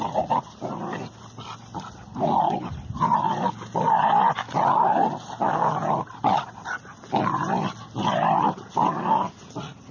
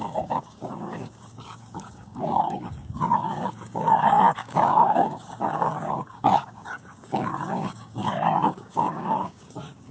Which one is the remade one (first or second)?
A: second